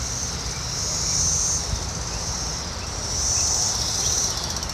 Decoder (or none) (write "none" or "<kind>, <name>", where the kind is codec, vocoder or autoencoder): none